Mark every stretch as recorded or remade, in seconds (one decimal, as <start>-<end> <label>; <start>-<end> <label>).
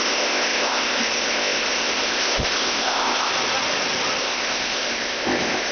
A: 0.0-3.3 remade; 3.3-4.2 recorded; 4.2-5.7 remade